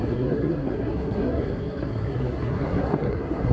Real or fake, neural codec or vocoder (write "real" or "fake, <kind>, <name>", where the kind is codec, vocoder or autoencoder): fake, codec, SNAC